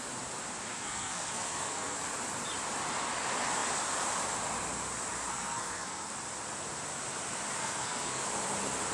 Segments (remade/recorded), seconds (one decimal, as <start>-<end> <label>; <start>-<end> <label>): 0.0-0.7 recorded; 0.7-2.0 remade; 2.0-5.3 recorded; 5.3-6.1 remade; 6.1-7.6 recorded; 7.6-8.3 remade; 8.3-8.9 recorded